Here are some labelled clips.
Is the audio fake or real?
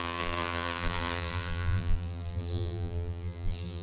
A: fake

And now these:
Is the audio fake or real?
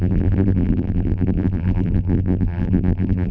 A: fake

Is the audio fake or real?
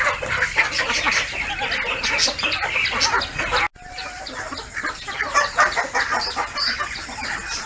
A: real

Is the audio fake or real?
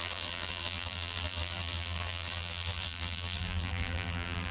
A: fake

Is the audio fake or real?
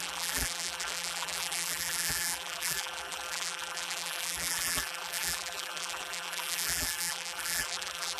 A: fake